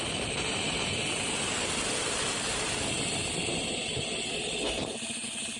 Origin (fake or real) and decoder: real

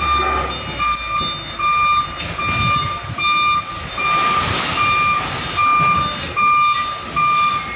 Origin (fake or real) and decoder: real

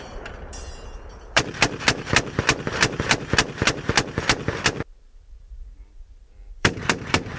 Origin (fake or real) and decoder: fake, vocoder, BigVGAN v2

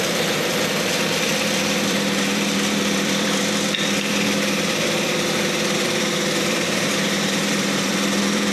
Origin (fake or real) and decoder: fake, vocoder, BigVGAN v2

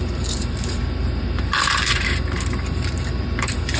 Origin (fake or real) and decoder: fake, vocoder, BigVGAN v2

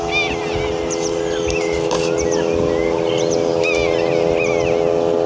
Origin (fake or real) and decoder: real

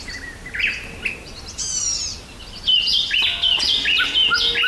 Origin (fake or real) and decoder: real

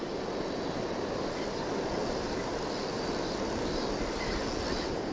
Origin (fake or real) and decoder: real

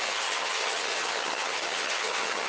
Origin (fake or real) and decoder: fake, vocoder, HiFi-GAN